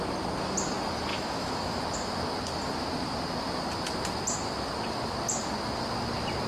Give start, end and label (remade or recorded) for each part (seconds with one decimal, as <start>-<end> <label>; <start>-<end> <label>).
0.0-1.1 recorded; 1.1-1.8 remade; 1.8-6.5 recorded